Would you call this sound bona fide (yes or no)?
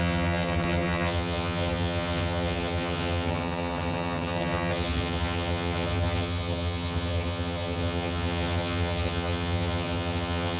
no